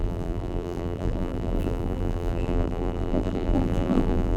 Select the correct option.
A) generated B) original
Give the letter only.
A